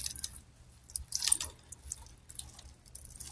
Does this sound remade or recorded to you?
recorded